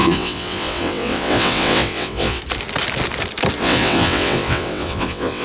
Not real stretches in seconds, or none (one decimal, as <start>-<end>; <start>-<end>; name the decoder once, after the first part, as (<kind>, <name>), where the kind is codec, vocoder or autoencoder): 0.0-2.4 (vocoder, WaveNeXt); 3.6-5.4